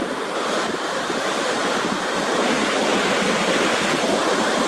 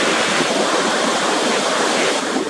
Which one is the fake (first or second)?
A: second